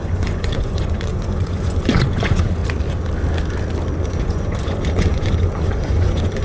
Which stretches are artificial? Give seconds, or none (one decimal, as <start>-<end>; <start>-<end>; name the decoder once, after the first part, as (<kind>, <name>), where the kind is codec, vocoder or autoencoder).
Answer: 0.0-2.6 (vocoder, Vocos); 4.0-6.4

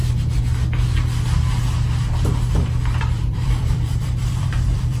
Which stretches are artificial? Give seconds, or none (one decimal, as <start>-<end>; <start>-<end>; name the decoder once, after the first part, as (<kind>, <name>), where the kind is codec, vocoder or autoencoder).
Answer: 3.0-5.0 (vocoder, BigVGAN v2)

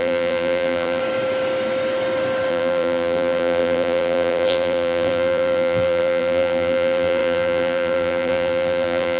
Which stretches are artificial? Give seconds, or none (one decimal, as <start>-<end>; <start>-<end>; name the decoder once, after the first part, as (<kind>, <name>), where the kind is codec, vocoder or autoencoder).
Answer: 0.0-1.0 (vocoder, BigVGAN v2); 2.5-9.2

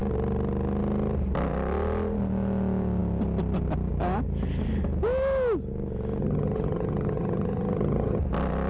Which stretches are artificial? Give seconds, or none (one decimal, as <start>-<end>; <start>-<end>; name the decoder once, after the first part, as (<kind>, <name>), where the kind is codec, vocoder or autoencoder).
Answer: 6.2-8.2 (vocoder, HiFi-GAN)